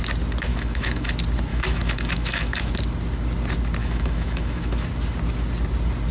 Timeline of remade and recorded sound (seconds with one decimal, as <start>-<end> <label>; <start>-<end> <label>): 0.0-0.5 recorded; 0.5-1.1 remade; 1.1-1.5 recorded; 1.5-2.7 remade; 2.7-3.8 recorded; 3.8-4.8 remade; 4.8-6.1 recorded